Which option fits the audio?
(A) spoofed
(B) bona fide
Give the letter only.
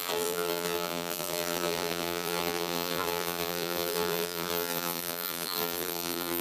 A